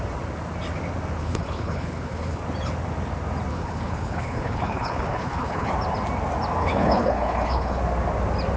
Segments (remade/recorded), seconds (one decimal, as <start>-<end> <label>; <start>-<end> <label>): 0.0-1.2 recorded; 1.2-2.4 remade; 2.4-3.5 recorded; 3.5-5.7 remade; 5.7-6.6 recorded; 6.6-7.8 remade; 7.8-8.6 recorded